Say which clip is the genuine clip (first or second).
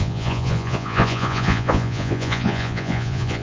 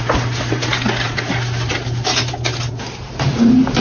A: second